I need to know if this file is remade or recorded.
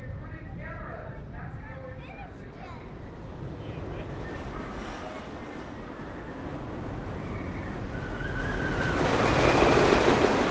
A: recorded